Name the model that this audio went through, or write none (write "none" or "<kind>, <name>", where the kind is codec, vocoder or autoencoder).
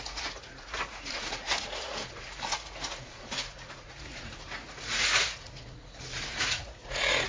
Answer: vocoder, Vocos